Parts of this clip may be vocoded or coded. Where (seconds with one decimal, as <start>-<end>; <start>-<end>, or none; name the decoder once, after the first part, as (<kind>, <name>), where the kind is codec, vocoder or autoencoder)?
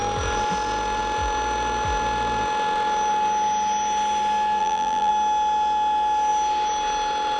4.6-5.1 (vocoder, BigVGAN v2)